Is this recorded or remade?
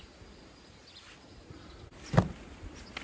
recorded